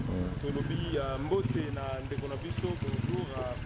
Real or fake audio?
real